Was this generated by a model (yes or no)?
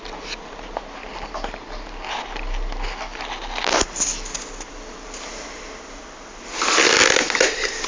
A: no